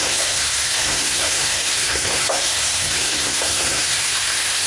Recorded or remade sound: remade